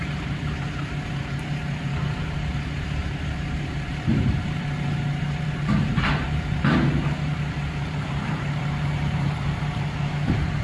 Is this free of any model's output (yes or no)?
no